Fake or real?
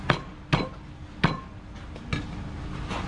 real